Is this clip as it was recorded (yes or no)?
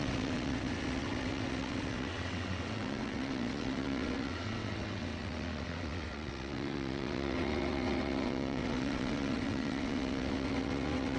no